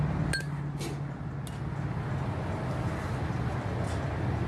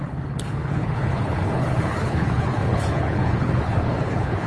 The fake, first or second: second